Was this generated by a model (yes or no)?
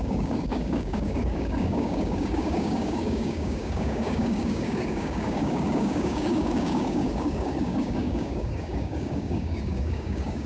yes